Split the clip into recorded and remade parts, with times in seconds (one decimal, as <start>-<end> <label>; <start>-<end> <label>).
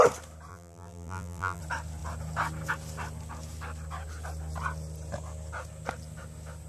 0.0-0.5 recorded; 0.5-1.6 remade; 1.6-6.7 recorded